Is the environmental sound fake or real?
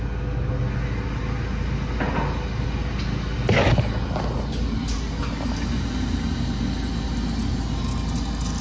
real